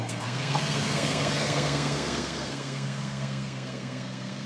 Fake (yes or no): yes